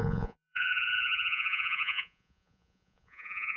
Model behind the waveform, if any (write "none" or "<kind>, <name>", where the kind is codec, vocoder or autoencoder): vocoder, Vocos